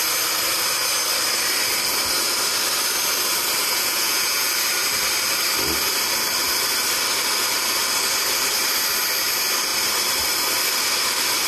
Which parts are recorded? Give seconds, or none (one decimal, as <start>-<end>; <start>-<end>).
0.0-3.6; 4.5-11.5